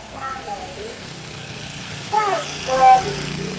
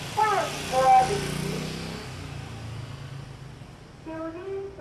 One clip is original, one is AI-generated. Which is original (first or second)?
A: second